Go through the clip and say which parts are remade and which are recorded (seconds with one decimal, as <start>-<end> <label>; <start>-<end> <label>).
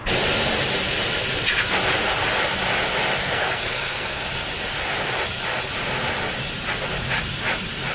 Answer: 0.0-3.2 recorded; 3.2-4.2 remade; 4.2-7.9 recorded